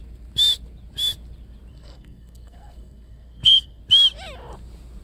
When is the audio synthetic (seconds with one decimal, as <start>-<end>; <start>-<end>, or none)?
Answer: 1.7-3.8